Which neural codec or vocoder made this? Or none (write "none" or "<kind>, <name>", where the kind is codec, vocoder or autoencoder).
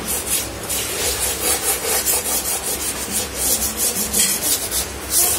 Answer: none